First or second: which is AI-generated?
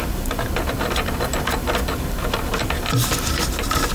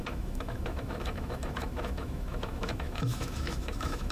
second